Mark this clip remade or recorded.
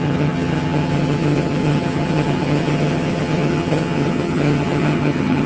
remade